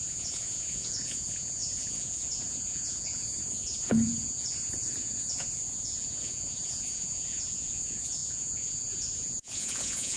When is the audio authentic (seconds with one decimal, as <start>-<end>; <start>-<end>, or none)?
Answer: none

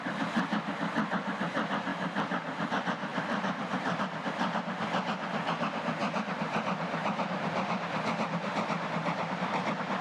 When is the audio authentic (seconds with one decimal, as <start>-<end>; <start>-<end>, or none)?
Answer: 0.0-3.1; 4.0-10.0

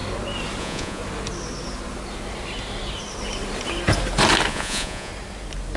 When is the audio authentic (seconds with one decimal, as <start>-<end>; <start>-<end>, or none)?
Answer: 0.0-0.6; 1.0-4.5; 5.1-5.8

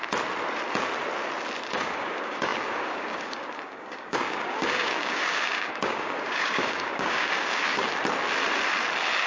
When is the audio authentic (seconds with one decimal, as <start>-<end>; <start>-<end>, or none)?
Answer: 0.0-1.7; 7.9-9.3